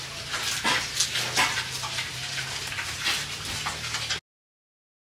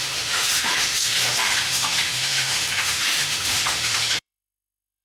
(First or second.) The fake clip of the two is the second